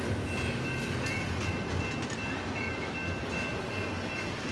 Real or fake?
real